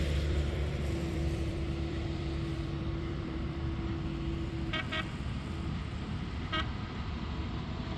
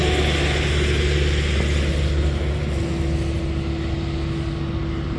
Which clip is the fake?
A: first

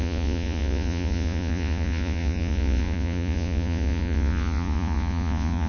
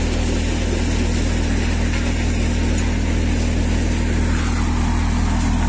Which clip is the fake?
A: first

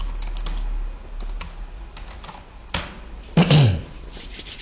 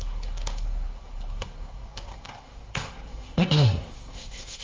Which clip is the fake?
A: second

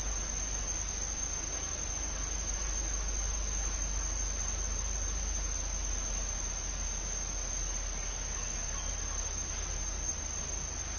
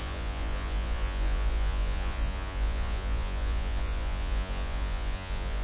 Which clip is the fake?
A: second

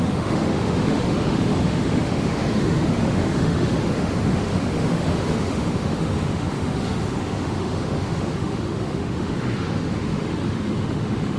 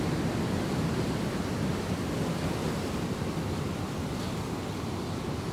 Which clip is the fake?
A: first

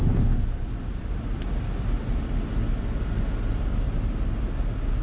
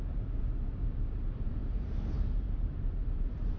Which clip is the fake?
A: second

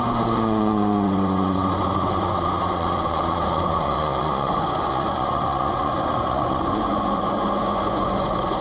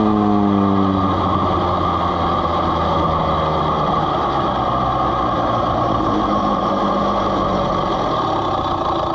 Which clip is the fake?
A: first